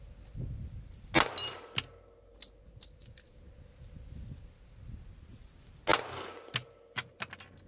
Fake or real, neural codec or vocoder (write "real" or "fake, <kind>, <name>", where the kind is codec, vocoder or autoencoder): real